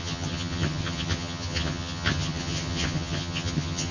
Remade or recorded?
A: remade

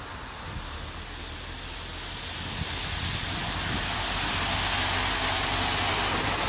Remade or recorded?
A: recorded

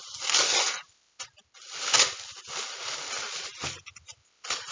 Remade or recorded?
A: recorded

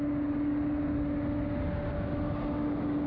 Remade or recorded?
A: recorded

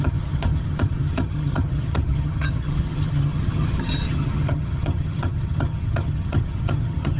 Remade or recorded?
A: remade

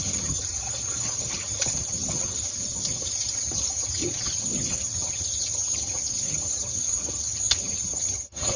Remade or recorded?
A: remade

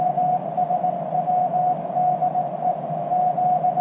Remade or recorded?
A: recorded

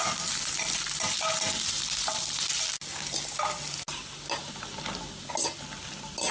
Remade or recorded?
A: recorded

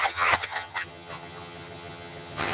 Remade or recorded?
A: remade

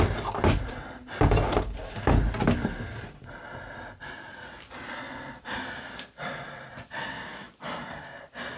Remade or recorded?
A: recorded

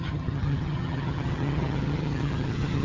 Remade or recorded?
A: remade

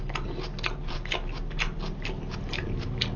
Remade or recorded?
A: recorded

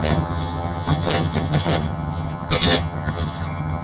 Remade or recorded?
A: remade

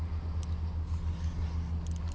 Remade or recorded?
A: recorded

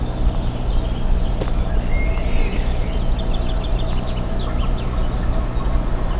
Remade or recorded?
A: recorded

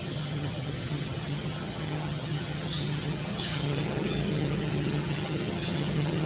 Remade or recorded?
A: remade